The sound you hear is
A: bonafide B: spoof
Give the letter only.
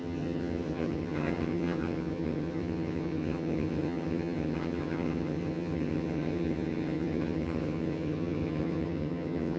B